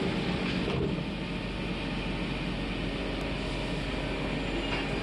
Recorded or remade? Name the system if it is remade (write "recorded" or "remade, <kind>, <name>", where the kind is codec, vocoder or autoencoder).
recorded